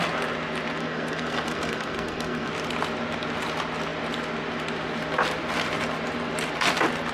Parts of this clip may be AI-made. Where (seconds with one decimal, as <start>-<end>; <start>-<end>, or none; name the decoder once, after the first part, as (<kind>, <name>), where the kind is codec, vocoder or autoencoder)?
0.8-2.5 (codec, SNAC)